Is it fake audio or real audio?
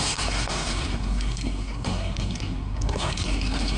fake